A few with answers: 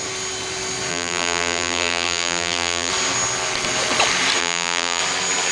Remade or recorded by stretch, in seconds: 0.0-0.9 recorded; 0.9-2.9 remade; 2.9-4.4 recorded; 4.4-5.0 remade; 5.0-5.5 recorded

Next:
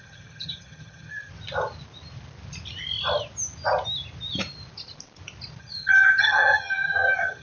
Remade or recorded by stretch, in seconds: 0.0-1.3 remade; 1.3-5.6 recorded; 5.6-7.4 remade

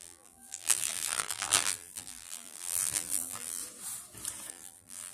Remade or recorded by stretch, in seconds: 0.0-3.6 remade; 3.6-4.5 recorded; 4.5-5.1 remade

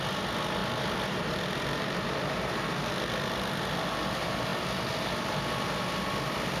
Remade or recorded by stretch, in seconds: 0.0-0.6 recorded; 0.6-2.6 remade; 2.6-6.6 recorded

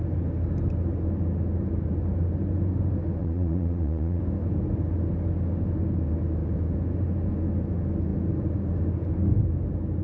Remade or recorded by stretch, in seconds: 0.0-3.2 recorded; 3.2-4.2 remade; 4.2-10.0 recorded